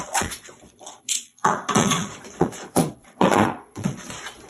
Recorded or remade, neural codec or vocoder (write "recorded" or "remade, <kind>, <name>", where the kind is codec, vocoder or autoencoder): remade, vocoder, Vocos